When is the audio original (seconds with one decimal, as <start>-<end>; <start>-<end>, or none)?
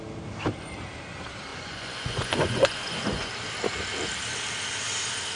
0.0-1.5; 3.3-5.4